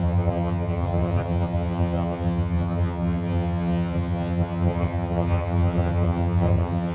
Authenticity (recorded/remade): remade